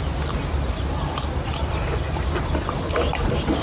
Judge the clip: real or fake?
real